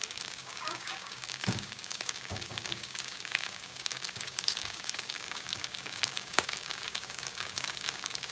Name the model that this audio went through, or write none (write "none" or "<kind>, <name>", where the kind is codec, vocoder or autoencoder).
codec, DAC